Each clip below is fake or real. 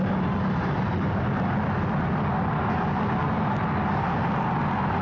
real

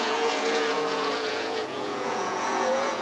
fake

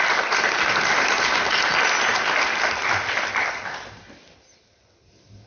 real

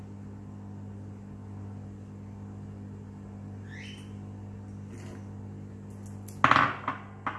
real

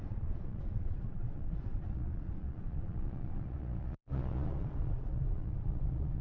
fake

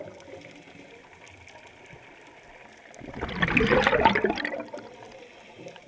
real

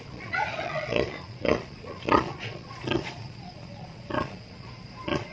fake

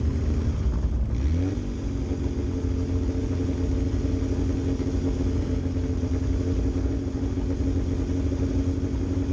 real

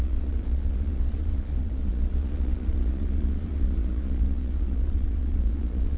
fake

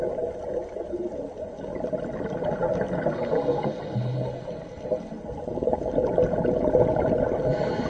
real